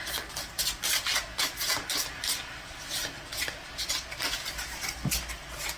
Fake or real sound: real